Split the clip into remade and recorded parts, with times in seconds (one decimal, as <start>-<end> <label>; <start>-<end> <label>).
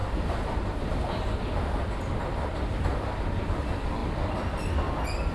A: 0.0-5.3 recorded